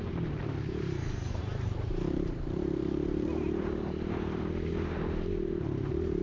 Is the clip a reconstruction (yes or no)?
yes